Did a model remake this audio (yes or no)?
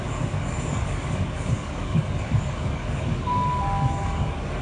yes